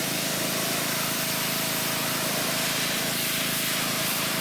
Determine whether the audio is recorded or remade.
remade